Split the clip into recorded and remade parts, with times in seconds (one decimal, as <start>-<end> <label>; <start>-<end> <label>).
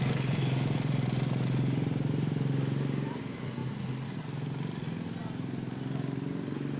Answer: 0.0-6.8 recorded